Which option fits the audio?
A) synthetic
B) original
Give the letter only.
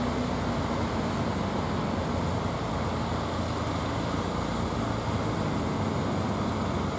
B